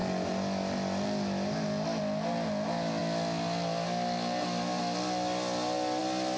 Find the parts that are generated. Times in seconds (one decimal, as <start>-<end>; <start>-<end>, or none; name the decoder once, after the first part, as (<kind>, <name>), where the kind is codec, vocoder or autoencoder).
none